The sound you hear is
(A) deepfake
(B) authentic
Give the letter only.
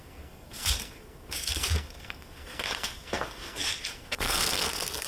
A